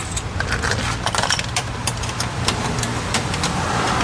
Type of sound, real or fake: fake